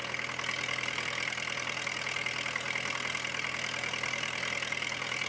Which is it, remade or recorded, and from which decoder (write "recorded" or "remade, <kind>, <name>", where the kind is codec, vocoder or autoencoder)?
recorded